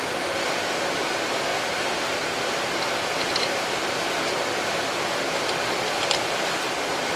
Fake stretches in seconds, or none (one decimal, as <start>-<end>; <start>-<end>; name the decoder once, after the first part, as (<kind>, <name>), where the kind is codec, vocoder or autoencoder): 0.0-7.2 (vocoder, BigVGAN v2)

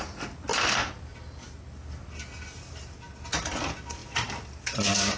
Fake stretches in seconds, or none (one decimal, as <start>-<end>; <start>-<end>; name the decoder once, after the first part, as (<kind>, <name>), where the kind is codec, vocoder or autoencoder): 4.0-5.2 (vocoder, BigVGAN v2)

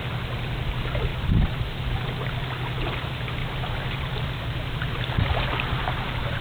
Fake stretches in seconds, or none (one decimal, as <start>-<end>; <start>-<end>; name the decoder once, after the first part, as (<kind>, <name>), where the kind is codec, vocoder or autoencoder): 1.1-1.9 (vocoder, BigVGAN v2); 3.4-6.4

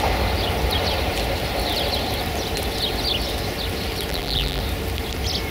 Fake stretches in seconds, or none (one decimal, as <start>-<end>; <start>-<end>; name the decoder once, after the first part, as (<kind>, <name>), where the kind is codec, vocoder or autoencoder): 4.1-4.6 (vocoder, BigVGAN v2)

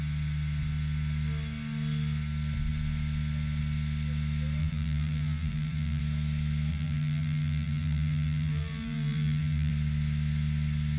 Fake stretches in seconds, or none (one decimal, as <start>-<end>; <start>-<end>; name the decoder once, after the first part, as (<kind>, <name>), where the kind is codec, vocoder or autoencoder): 4.6-6.0 (vocoder, BigVGAN v2); 6.7-9.7

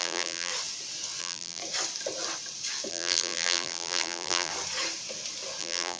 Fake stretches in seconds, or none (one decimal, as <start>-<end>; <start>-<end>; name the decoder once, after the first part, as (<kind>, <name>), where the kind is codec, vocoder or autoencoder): 0.0-0.5 (vocoder, BigVGAN v2); 1.2-1.6; 2.9-4.5; 5.6-6.0